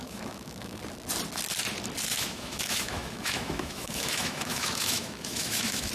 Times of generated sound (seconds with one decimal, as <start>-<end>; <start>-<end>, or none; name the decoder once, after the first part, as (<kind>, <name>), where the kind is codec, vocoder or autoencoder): 0.0-0.8 (autoencoder, DAC-VAE); 2.1-5.9